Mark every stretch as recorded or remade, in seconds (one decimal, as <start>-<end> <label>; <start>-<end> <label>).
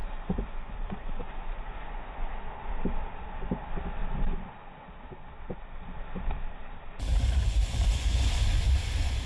0.0-2.3 remade; 2.3-7.1 recorded; 7.1-9.3 remade